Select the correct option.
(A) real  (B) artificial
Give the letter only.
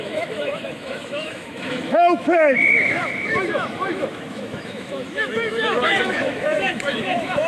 B